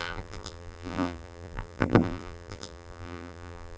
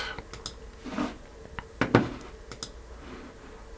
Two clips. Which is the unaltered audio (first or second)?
second